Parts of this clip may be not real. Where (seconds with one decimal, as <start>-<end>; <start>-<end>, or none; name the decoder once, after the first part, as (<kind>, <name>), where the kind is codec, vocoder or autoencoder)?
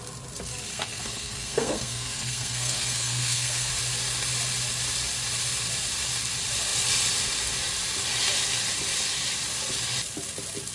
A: 0.7-3.7 (codec, SNAC)